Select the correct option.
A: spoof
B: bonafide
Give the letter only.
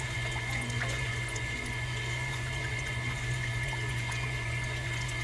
A